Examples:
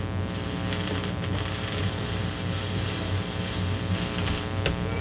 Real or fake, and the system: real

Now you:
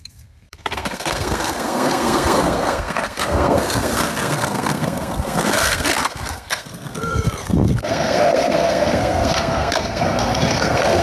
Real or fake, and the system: fake, codec, SNAC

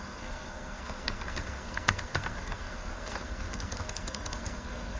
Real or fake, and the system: fake, codec, SNAC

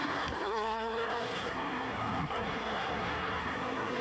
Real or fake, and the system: fake, codec, SNAC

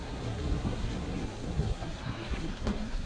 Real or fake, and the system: fake, codec, SNAC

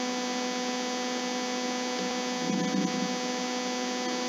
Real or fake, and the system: real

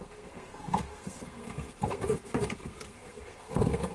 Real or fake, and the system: fake, codec, SNAC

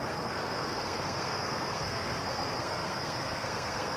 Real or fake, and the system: fake, codec, SNAC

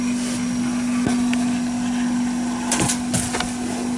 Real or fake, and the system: real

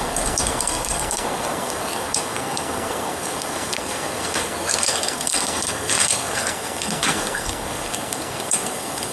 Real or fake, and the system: fake, codec, SNAC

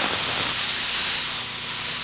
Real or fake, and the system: real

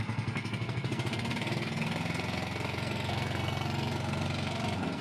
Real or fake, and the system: fake, codec, SNAC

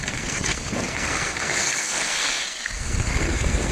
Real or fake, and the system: fake, codec, SNAC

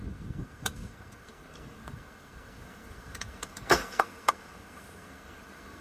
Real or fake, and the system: fake, codec, SNAC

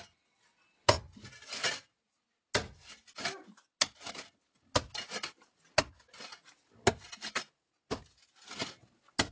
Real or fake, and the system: real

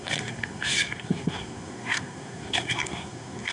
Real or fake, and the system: fake, codec, SNAC